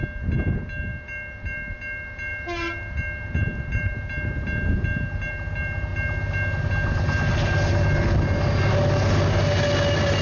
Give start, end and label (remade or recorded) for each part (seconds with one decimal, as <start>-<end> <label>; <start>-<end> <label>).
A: 0.0-10.2 recorded